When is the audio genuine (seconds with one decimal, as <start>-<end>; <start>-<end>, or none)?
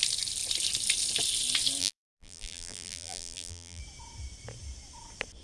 0.0-1.8; 3.8-5.4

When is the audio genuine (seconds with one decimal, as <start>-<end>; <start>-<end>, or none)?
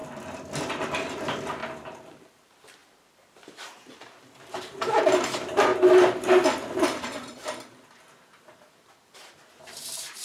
0.0-0.9; 5.7-6.7